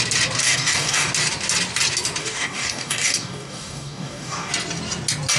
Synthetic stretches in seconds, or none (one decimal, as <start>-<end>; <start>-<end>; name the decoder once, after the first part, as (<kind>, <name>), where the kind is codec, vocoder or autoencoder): 0.4-1.1 (codec, DAC); 2.2-4.5